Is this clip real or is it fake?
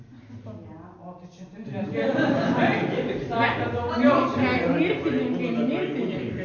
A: real